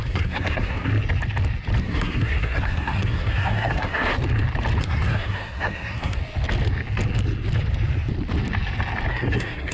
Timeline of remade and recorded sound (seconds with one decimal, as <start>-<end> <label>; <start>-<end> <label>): 0.0-0.9 remade; 0.9-1.8 recorded; 1.8-4.1 remade; 4.1-4.8 recorded; 4.8-6.2 remade; 6.2-9.1 recorded; 9.1-9.7 remade